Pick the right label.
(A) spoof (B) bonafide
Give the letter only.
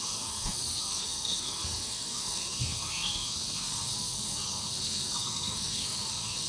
A